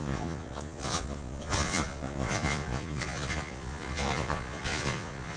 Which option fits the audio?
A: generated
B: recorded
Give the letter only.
A